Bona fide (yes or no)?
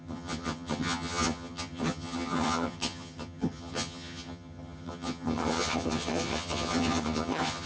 no